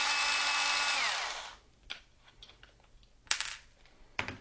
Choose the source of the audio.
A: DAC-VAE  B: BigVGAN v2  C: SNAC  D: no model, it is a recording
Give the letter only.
D